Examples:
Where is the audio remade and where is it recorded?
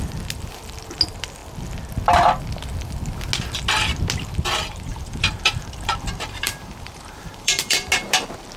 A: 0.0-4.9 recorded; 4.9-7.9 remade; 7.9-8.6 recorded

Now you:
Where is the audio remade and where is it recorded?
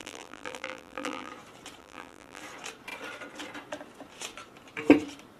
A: 0.0-1.3 remade; 1.3-1.8 recorded; 1.8-2.4 remade; 2.4-5.4 recorded